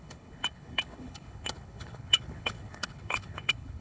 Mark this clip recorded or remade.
remade